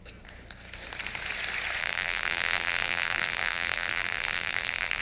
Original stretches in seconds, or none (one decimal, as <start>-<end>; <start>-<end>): 0.0-1.8